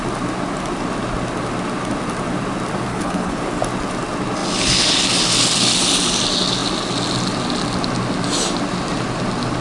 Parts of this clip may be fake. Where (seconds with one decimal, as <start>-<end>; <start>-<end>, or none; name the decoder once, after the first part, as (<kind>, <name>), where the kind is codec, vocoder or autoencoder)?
2.9-3.4 (codec, HILCodec)